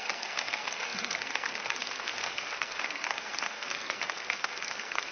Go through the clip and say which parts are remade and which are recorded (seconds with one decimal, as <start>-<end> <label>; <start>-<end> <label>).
0.0-5.1 remade